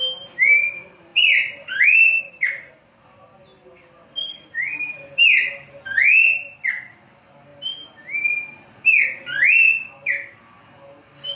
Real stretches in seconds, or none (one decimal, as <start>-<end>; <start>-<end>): 0.0-1.1; 2.7-3.4; 6.6-11.4

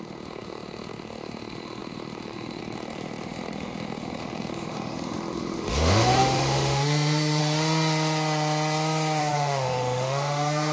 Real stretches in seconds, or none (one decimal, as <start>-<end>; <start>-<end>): 7.4-9.2